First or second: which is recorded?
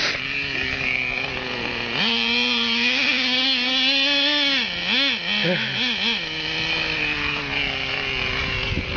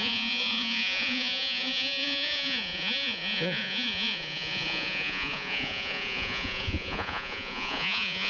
first